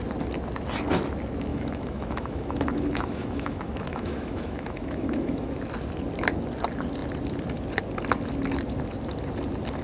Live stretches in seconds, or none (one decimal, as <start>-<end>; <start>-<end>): 0.0-1.5; 5.5-9.8